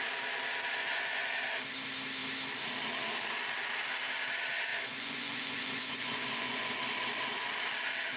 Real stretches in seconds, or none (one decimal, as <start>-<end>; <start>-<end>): 0.0-0.8; 1.3-4.7; 6.7-8.2